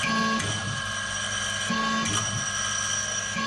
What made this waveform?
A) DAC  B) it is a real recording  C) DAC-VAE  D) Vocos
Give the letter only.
B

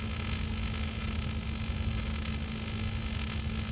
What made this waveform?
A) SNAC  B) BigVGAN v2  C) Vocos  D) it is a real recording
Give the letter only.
D